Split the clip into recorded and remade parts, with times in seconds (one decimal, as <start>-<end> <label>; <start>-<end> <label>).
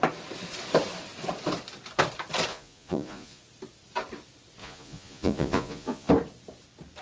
0.0-2.5 recorded; 2.5-3.4 remade; 3.4-4.6 recorded; 4.6-6.1 remade; 6.1-7.0 recorded